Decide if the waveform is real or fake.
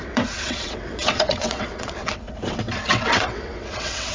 fake